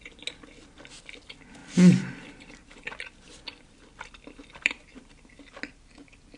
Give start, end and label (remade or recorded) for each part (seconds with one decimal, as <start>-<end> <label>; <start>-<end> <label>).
0.0-1.6 recorded; 1.6-5.4 remade; 5.4-6.4 recorded